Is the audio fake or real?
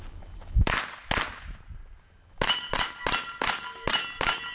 real